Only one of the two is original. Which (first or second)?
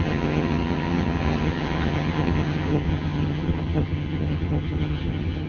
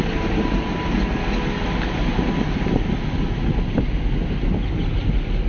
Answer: second